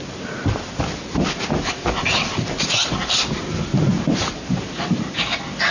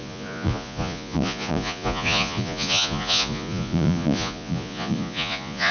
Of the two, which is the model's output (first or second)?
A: second